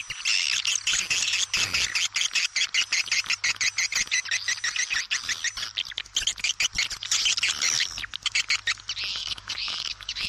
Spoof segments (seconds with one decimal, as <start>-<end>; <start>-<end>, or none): 9.1-10.3